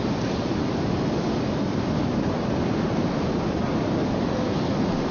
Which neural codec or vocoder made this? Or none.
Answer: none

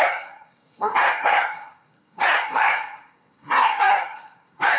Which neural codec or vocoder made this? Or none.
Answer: codec, SNAC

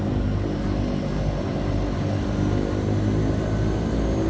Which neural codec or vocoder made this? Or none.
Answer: none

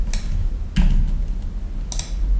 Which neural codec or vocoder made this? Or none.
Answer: none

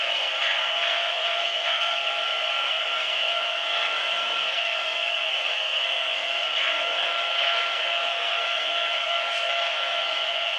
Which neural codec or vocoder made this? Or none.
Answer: codec, SNAC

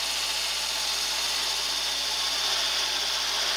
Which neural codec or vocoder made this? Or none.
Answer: none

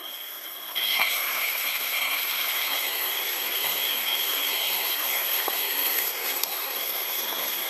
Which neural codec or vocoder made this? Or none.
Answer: codec, SNAC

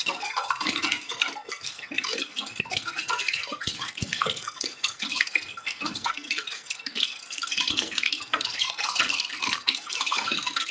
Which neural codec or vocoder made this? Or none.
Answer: codec, SNAC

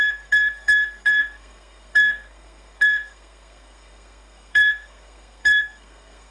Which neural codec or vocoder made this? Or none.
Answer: codec, SNAC